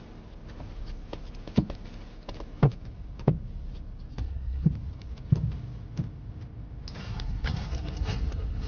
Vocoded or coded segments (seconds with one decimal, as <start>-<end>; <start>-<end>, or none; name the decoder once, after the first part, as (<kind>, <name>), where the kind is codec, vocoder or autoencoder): 4.1-4.7 (codec, SNAC); 7.0-8.7